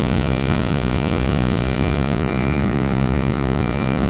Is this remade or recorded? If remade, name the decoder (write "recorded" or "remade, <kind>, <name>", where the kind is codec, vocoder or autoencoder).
remade, vocoder, Vocos